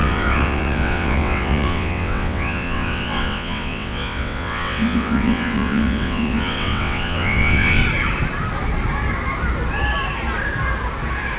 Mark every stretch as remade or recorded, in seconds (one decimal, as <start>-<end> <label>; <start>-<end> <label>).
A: 0.0-7.8 remade; 7.8-11.4 recorded